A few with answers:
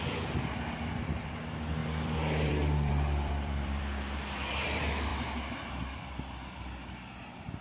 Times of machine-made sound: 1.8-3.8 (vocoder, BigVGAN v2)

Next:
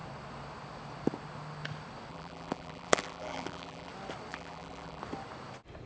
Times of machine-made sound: 2.1-3.9 (vocoder, BigVGAN v2); 4.3-5.0

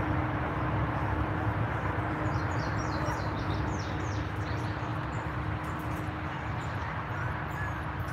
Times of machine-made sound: none

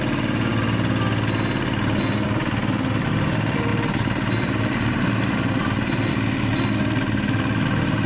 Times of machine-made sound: 3.7-6.1 (vocoder, BigVGAN v2)

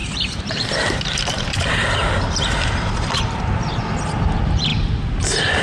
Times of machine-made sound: 0.0-3.4 (vocoder, BigVGAN v2)

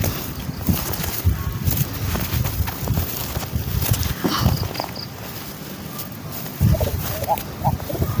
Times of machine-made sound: none